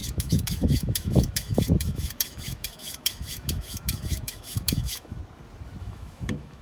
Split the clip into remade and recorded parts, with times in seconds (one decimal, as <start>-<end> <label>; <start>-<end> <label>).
0.0-5.2 remade; 5.2-5.8 recorded; 5.8-6.6 remade